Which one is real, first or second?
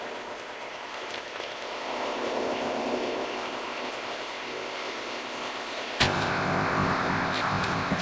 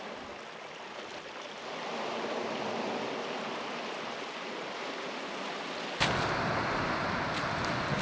second